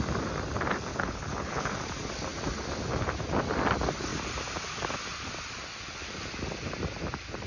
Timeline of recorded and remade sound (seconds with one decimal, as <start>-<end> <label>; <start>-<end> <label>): 0.0-0.9 recorded; 0.9-1.7 remade; 1.7-7.5 recorded